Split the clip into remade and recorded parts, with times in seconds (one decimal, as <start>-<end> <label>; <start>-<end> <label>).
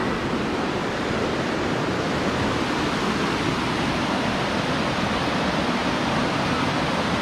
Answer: 0.0-7.2 recorded